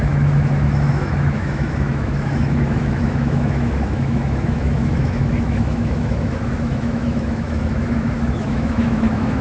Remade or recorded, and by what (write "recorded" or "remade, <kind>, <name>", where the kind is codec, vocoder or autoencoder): remade, autoencoder, DAC-VAE